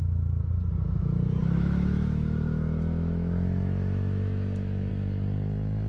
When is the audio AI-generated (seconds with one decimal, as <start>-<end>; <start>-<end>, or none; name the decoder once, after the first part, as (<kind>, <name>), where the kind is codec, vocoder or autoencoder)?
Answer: 1.4-4.9 (autoencoder, DAC-VAE)